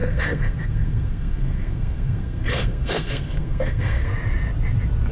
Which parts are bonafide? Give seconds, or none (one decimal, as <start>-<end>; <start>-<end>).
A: 4.1-5.1